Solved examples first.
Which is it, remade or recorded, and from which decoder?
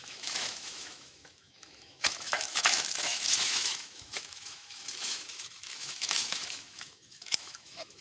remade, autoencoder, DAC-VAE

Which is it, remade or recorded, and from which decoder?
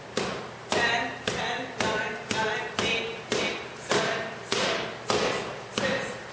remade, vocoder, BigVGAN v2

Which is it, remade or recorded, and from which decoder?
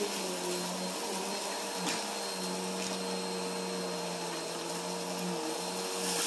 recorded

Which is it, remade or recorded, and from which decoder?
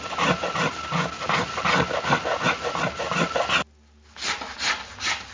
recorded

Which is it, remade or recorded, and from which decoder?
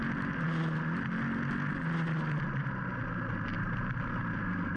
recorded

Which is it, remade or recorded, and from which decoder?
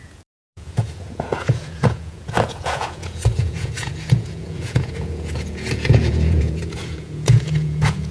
remade, vocoder, Vocos